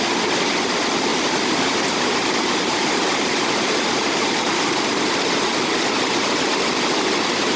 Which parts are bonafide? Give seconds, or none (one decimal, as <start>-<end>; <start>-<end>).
0.0-1.1; 4.3-7.6